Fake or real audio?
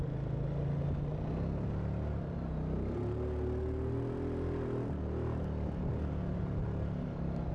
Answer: real